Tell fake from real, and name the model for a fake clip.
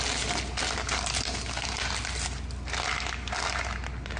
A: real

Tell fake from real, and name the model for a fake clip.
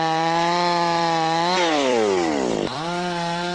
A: fake, vocoder, BigVGAN v2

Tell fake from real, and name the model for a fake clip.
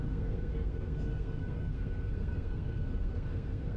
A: fake, codec, SNAC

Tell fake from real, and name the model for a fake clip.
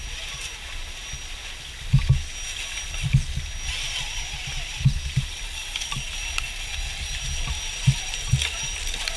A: real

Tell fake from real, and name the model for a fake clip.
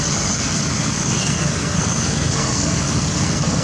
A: fake, codec, SNAC